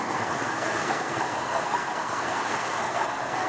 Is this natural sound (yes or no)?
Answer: no